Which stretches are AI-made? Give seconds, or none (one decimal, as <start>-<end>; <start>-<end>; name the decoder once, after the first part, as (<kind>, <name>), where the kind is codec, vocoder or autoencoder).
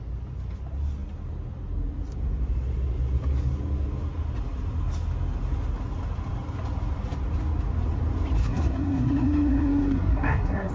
8.4-10.7 (codec, SNAC)